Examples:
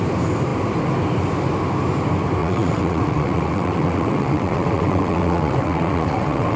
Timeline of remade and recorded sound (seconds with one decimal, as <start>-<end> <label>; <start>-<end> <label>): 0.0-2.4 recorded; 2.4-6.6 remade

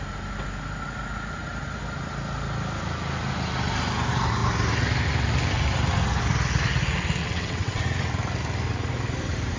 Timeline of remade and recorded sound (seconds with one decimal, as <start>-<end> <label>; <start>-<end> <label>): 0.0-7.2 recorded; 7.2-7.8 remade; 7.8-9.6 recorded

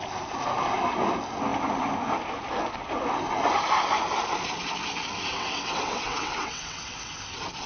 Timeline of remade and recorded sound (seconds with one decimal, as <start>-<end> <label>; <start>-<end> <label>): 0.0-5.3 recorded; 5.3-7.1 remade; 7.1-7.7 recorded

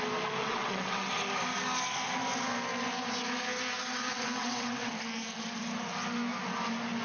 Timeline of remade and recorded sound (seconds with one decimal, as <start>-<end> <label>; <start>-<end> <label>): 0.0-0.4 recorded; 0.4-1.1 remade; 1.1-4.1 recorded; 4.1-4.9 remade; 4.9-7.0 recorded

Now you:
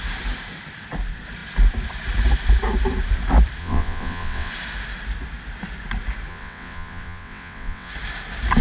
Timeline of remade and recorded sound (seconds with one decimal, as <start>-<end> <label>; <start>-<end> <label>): 0.0-3.6 recorded; 3.6-4.5 remade; 4.5-6.3 recorded; 6.3-7.9 remade; 7.9-8.6 recorded

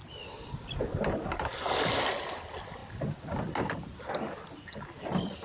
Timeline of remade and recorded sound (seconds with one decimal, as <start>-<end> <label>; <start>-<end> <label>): 0.0-5.4 recorded